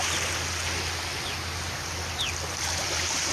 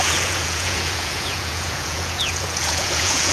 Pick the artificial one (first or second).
second